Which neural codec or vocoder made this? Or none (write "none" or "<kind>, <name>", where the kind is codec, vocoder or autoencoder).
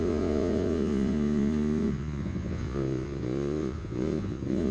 vocoder, Vocos